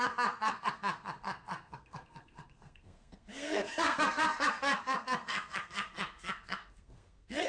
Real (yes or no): no